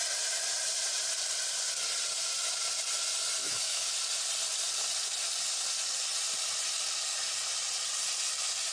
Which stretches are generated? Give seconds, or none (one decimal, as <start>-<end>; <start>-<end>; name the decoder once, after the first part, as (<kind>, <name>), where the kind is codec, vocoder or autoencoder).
3.4-3.9 (autoencoder, DAC-VAE)